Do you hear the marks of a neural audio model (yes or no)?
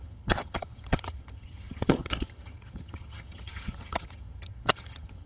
yes